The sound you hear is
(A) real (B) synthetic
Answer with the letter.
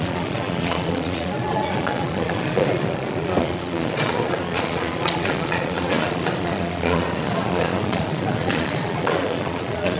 B